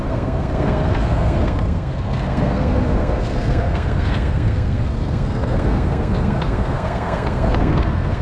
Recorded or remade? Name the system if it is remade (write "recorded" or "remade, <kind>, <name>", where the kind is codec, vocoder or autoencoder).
remade, codec, SNAC